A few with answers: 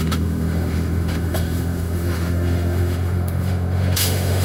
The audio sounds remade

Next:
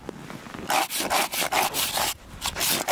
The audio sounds recorded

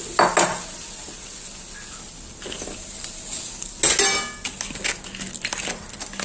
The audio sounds recorded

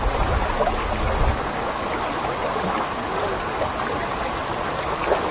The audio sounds recorded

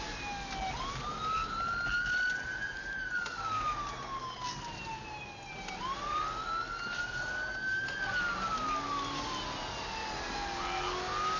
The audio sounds recorded